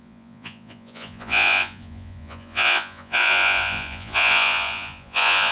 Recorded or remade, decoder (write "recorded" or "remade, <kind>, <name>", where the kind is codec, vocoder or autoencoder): remade, vocoder, Vocos